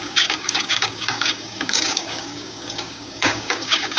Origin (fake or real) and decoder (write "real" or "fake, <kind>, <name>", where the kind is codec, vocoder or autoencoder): fake, codec, DAC